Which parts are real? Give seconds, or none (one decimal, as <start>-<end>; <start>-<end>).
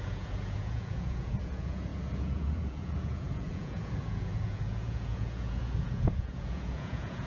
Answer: none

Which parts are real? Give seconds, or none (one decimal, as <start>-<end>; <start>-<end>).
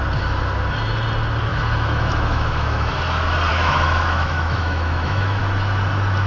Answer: 0.0-1.5; 2.9-3.5; 5.4-6.3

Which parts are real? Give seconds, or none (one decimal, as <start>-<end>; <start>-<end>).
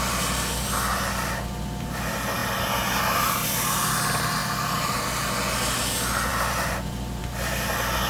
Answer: 0.0-8.1